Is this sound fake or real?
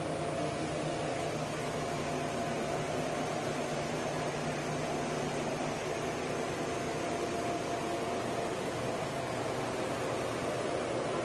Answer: real